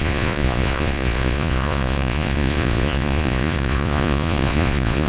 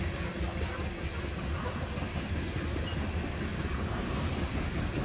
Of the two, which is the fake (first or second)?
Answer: first